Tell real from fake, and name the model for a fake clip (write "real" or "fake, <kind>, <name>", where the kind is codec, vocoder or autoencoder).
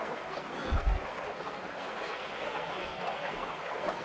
fake, codec, SNAC